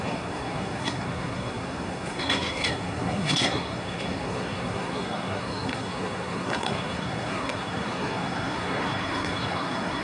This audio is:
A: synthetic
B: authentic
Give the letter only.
A